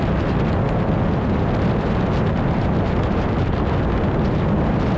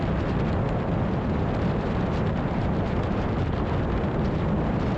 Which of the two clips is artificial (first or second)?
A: second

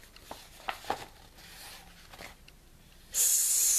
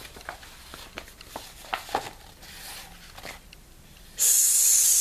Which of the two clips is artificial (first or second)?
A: second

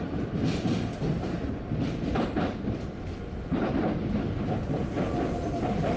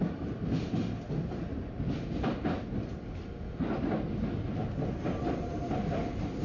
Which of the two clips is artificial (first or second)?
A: first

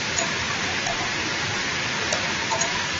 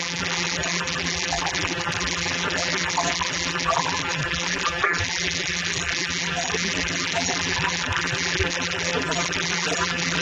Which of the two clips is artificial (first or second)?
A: second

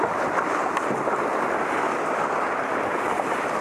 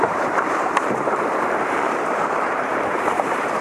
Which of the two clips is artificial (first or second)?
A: second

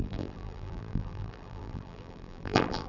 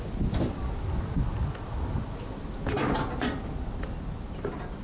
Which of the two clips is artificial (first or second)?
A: first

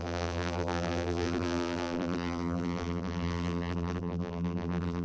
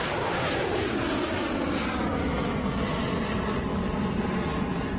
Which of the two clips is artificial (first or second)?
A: first